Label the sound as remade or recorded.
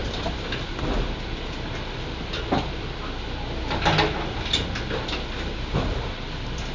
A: recorded